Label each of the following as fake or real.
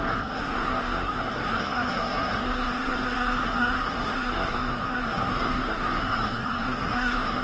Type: fake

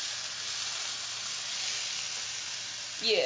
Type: real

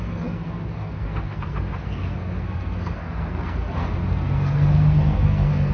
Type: fake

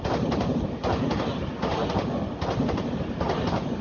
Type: real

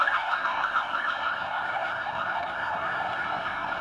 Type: fake